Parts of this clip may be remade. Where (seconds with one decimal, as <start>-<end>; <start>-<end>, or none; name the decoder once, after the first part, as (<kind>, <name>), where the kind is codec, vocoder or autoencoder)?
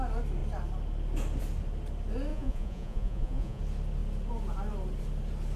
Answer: 2.3-3.6 (vocoder, Vocos)